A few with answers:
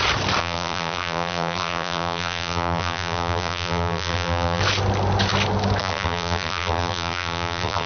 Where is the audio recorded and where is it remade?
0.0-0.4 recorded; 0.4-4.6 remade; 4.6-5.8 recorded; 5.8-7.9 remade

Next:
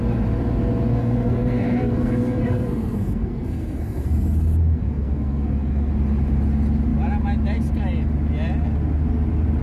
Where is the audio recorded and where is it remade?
0.0-0.9 recorded; 0.9-5.9 remade; 5.9-9.6 recorded